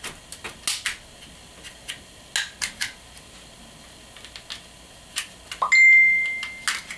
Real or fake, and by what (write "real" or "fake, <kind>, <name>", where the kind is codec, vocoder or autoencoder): real